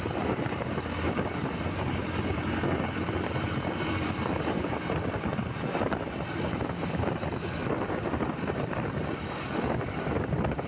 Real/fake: fake